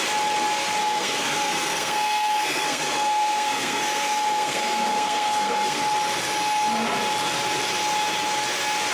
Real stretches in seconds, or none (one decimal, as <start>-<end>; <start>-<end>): 0.0-0.8; 5.8-8.9